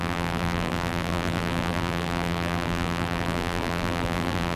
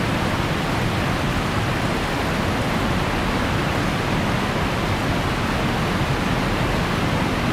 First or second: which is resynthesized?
first